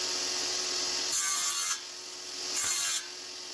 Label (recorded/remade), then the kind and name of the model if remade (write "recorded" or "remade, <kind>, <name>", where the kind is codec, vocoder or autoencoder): recorded